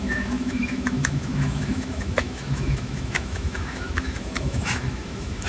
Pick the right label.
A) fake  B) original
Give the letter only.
A